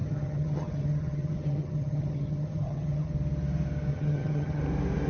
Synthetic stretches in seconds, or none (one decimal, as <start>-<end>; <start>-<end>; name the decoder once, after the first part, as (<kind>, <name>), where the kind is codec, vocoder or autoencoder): 0.0-3.1 (vocoder, HiFi-GAN); 3.9-4.6